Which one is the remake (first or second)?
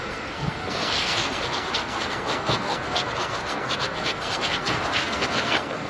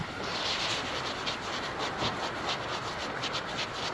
first